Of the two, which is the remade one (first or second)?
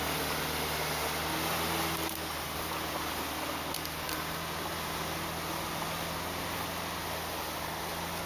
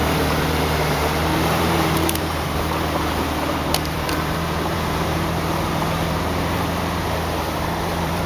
second